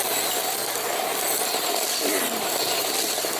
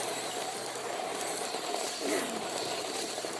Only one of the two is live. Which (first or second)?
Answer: first